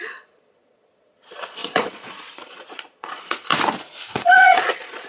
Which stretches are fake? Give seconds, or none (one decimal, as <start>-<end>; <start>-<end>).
0.0-3.5; 4.1-5.1